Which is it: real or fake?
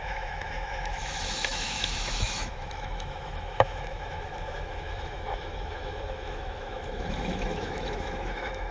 fake